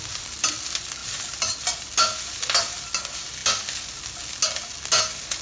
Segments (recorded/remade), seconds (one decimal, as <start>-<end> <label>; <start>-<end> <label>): 0.0-5.4 recorded